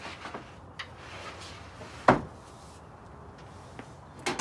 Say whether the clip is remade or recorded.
recorded